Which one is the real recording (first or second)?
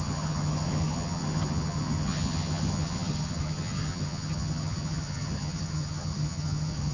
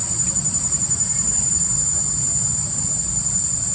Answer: second